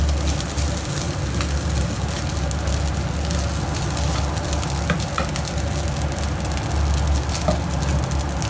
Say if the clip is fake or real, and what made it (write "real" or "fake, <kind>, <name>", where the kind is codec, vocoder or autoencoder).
real